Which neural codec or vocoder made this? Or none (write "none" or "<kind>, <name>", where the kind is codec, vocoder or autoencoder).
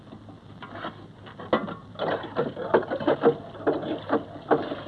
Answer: none